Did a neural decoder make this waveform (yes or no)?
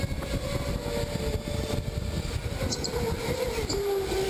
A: no